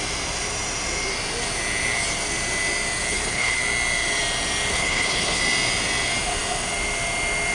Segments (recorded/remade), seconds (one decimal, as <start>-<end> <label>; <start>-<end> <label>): 0.0-3.1 recorded; 3.1-3.6 remade; 3.6-4.7 recorded; 4.7-5.4 remade; 5.4-7.5 recorded